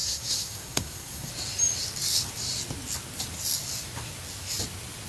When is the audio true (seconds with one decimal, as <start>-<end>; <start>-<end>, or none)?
1.3-5.1